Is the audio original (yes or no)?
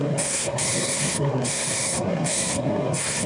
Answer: no